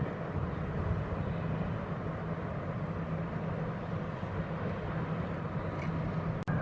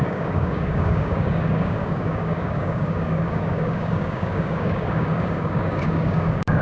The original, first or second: first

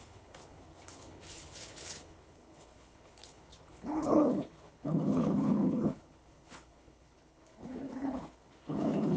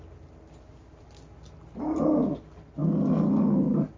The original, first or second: second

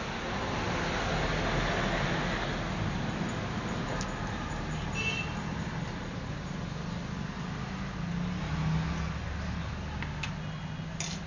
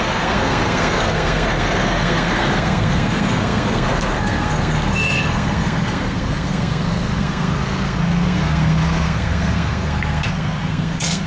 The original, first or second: first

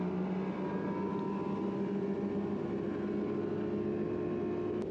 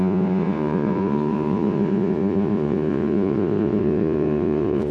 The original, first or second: first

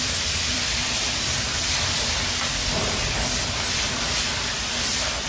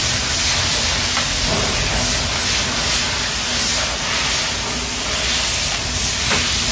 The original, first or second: second